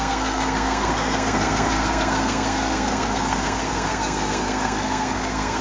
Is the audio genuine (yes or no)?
no